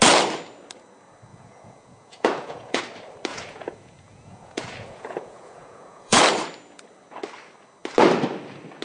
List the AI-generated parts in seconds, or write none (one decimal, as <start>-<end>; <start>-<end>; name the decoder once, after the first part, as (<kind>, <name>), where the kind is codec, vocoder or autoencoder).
1.3-2.8 (vocoder, Vocos); 3.3-6.2